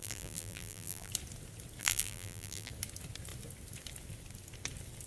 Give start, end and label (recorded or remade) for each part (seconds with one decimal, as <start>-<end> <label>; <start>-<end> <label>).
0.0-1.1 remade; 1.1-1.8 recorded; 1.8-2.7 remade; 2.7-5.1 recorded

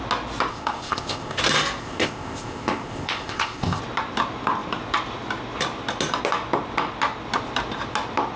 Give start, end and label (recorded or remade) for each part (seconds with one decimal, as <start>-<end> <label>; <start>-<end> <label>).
0.0-0.5 recorded; 0.5-1.4 remade; 1.4-1.8 recorded; 1.8-3.8 remade; 3.8-8.4 recorded

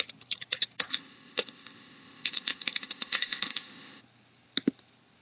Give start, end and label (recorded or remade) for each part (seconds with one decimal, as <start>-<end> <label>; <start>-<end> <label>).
0.0-0.9 recorded; 0.9-4.0 remade; 4.0-5.2 recorded